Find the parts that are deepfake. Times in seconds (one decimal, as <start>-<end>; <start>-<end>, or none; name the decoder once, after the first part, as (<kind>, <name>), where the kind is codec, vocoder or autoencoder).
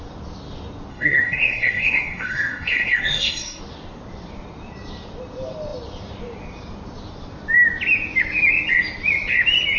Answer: 0.9-3.6 (codec, SNAC)